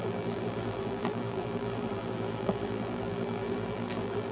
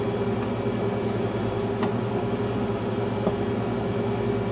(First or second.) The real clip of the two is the second